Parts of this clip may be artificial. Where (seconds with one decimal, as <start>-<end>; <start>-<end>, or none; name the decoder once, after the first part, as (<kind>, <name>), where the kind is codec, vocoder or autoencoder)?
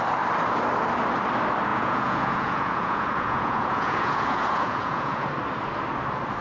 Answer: 1.7-5.3 (vocoder, Vocos)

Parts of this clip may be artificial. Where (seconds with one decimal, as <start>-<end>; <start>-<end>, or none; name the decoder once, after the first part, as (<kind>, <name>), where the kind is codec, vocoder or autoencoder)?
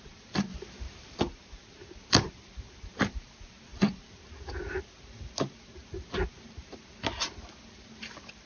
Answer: 0.5-1.2 (vocoder, BigVGAN v2)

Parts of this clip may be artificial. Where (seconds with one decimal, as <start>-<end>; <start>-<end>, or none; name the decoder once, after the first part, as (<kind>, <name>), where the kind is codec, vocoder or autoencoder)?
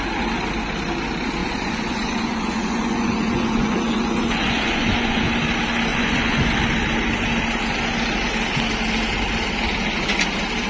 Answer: 1.4-5.2 (vocoder, Vocos); 5.9-6.5